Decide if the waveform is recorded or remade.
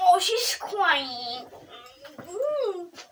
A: recorded